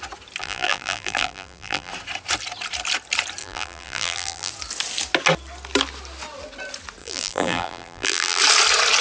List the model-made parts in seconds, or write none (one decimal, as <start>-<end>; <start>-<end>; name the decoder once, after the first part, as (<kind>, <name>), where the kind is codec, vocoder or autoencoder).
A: 0.4-1.9 (vocoder, BigVGAN v2); 3.4-4.5; 7.0-8.4